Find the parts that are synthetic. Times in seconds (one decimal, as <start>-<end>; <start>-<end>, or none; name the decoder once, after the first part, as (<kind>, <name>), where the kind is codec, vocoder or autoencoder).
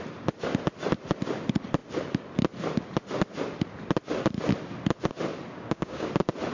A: 5.5-6.1 (codec, DAC)